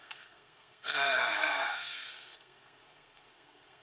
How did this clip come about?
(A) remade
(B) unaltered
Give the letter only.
A